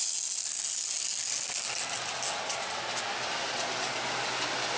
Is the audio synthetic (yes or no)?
no